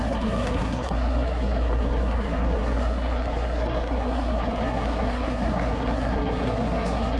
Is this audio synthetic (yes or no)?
yes